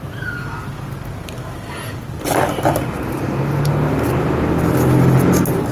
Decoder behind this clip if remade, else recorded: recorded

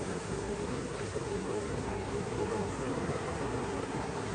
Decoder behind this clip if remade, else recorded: remade, codec, SNAC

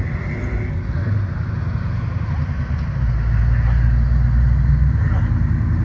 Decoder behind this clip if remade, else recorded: recorded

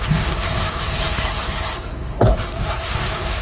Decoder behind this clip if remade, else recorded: remade, codec, SNAC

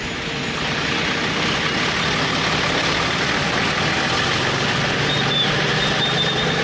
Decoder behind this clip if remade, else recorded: recorded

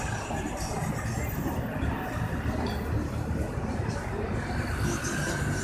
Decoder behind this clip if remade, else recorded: recorded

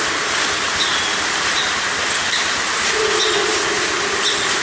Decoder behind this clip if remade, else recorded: recorded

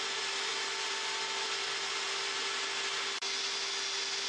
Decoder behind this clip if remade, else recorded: recorded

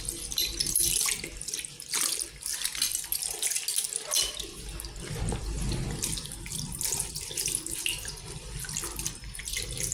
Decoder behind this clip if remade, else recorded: recorded